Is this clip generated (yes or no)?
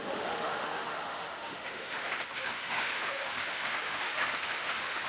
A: yes